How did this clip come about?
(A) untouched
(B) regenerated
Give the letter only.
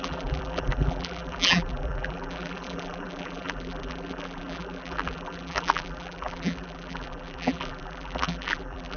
B